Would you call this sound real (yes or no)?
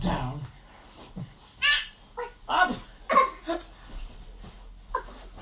yes